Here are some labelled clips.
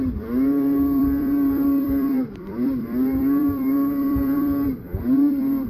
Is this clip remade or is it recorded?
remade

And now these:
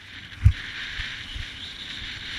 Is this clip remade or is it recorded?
recorded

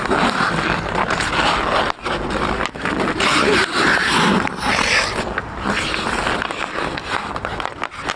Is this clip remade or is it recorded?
recorded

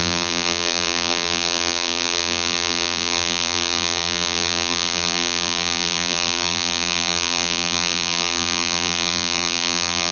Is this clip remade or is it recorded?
remade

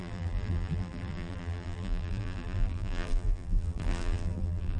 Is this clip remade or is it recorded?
remade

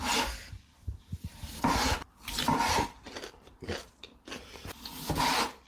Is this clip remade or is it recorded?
remade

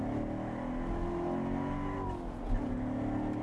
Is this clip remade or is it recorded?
recorded